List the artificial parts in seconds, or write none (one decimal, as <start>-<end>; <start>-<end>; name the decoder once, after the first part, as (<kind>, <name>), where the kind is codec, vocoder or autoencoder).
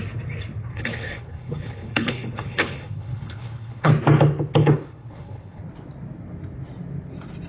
0.7-3.9 (codec, HILCodec); 4.6-5.6